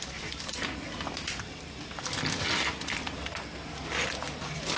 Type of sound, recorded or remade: recorded